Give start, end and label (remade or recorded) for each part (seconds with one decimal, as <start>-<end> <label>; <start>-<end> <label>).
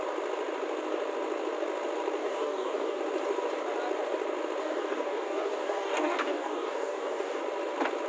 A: 0.0-2.2 recorded; 2.2-3.0 remade; 3.0-4.6 recorded; 4.6-7.4 remade; 7.4-8.1 recorded